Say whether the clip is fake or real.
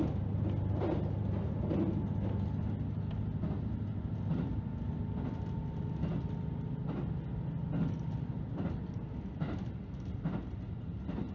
real